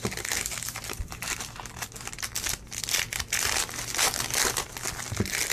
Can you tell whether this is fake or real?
real